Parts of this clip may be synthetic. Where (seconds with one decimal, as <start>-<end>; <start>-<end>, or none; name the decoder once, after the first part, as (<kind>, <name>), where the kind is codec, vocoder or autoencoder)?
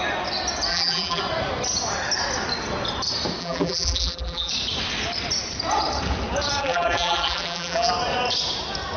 0.7-1.2 (vocoder, BigVGAN v2); 3.4-4.5; 6.6-7.9